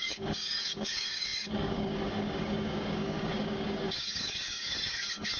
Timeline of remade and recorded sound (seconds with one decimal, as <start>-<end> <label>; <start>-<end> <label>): 0.0-5.4 remade